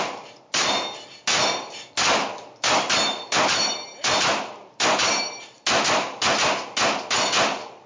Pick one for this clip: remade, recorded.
recorded